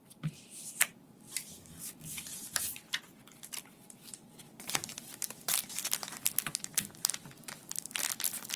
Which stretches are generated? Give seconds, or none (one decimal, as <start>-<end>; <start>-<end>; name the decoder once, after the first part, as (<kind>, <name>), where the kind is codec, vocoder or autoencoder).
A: none

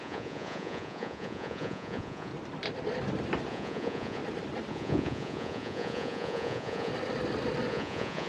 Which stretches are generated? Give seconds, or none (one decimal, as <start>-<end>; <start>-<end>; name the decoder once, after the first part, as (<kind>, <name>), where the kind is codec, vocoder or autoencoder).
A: 0.0-2.3 (vocoder, Vocos); 3.5-4.2; 4.7-6.9; 7.7-8.3